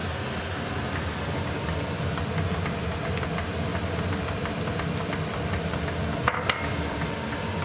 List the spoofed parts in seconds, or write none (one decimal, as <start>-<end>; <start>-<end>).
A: none